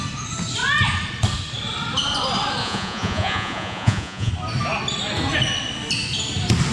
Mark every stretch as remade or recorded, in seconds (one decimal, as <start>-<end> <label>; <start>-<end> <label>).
0.0-2.6 recorded; 2.6-4.3 remade; 4.3-6.7 recorded